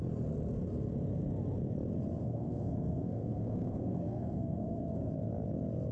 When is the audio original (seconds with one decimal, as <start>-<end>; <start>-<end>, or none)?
0.0-2.2; 5.1-5.9